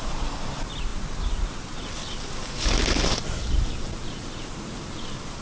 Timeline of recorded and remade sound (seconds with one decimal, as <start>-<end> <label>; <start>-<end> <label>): 0.0-5.4 recorded